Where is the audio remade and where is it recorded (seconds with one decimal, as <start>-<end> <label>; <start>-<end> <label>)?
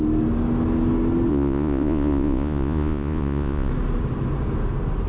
0.0-1.3 recorded; 1.3-3.7 remade; 3.7-5.1 recorded